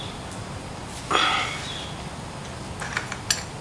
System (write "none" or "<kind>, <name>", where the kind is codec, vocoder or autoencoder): none